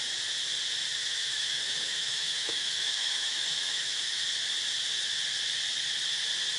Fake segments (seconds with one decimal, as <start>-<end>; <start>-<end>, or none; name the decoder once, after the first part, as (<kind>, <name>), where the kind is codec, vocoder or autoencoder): 1.0-4.2 (autoencoder, DAC-VAE)